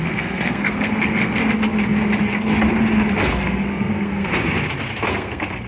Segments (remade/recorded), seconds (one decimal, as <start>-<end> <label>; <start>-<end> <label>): 0.0-1.4 remade; 1.4-3.3 recorded; 3.3-4.3 remade; 4.3-5.1 recorded; 5.1-5.7 remade